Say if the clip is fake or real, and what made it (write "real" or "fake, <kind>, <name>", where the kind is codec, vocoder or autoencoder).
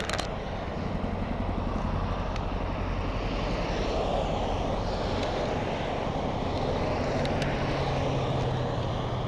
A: real